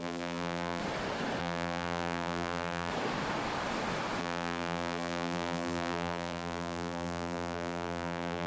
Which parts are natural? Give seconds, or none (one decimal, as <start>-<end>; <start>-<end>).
0.8-1.4; 2.9-4.2